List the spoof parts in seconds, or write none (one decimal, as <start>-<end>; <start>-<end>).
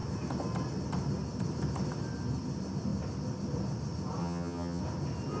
4.2-4.8